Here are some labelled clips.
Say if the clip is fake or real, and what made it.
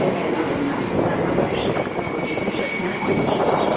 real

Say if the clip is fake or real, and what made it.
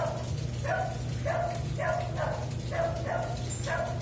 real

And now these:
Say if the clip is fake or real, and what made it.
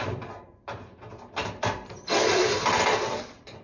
fake, vocoder, BigVGAN v2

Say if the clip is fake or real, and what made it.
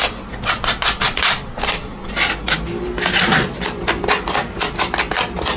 real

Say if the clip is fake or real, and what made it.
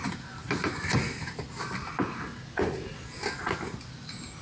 real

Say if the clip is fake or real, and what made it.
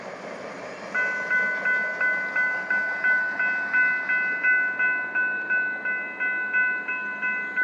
real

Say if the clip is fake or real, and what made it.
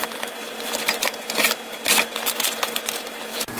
fake, vocoder, BigVGAN v2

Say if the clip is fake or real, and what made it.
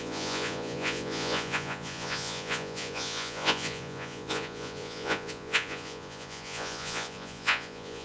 fake, vocoder, Vocos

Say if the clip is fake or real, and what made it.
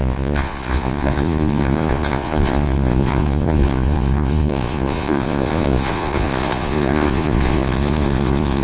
fake, vocoder, Vocos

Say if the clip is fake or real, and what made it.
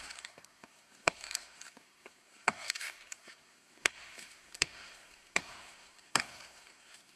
fake, codec, SNAC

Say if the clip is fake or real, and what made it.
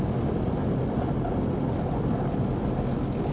real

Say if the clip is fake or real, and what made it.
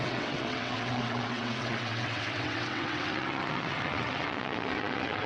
fake, vocoder, WaveNeXt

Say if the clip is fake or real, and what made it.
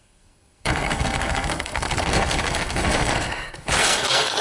fake, codec, SNAC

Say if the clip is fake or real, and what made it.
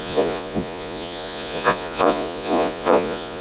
fake, vocoder, Vocos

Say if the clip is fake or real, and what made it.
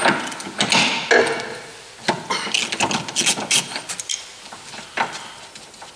real